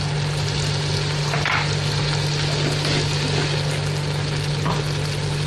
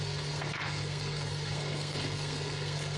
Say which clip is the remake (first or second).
second